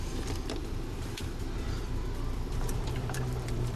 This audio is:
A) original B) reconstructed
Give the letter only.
B